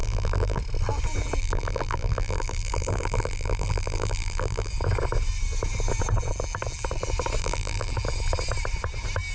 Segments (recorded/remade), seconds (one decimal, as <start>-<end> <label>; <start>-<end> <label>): 0.0-0.6 remade; 0.6-1.4 recorded; 1.4-4.7 remade; 4.7-7.4 recorded; 7.4-7.9 remade; 7.9-9.3 recorded